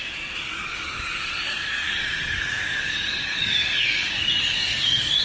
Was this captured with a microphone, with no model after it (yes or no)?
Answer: no